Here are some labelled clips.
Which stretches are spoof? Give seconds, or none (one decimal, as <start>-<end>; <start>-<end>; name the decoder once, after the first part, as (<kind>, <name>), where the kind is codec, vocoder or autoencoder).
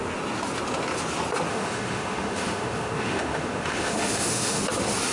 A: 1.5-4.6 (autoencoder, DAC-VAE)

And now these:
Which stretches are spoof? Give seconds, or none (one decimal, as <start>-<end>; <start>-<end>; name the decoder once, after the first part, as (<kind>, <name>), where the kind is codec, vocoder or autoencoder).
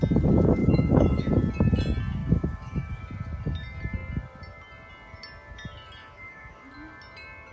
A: 0.6-1.3 (autoencoder, DAC-VAE); 2.2-3.0; 6.0-6.7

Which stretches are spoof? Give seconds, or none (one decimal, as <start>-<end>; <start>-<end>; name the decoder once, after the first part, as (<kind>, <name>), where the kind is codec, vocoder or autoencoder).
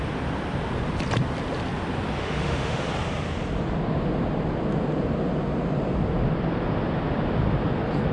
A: 2.2-2.8 (autoencoder, DAC-VAE)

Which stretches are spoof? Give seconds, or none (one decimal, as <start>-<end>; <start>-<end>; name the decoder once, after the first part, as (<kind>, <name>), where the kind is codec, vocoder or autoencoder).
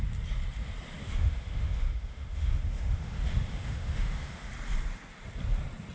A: 1.0-4.5 (autoencoder, DAC-VAE)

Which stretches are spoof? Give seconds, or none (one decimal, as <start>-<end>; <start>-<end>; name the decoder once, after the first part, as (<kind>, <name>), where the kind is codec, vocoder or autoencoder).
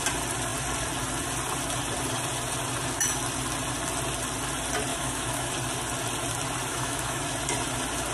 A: 4.9-5.5 (autoencoder, DAC-VAE); 6.7-7.2